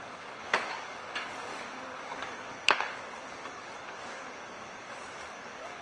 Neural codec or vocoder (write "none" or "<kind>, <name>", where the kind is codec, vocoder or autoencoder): codec, DAC